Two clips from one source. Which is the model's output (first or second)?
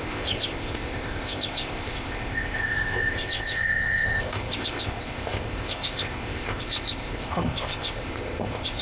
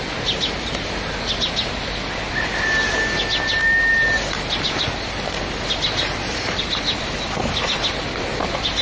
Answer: first